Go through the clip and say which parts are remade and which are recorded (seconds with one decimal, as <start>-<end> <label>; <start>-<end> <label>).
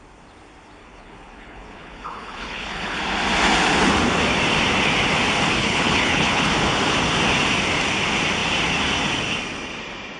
0.0-0.8 recorded; 0.8-3.0 remade; 3.0-5.6 recorded; 5.6-6.5 remade; 6.5-10.2 recorded